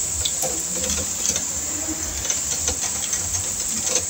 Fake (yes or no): no